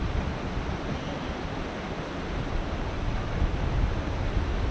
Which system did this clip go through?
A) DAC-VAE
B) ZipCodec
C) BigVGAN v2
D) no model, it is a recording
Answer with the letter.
D